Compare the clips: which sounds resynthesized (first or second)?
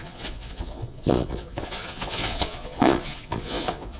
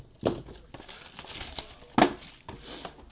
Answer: first